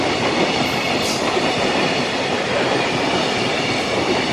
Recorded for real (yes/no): no